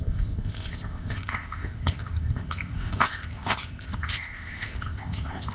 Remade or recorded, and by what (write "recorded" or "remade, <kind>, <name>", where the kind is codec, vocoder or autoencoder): remade, codec, ZipCodec